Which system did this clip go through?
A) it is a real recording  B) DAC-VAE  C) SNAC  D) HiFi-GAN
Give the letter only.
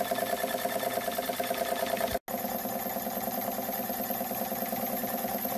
A